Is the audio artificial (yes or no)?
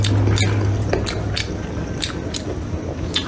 no